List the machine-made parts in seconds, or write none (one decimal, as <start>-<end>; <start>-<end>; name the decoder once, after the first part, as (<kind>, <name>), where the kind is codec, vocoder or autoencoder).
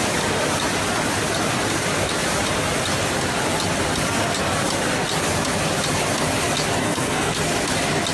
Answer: 6.8-7.4 (codec, SNAC)